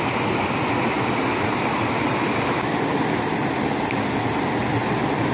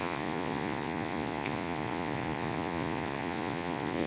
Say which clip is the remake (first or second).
second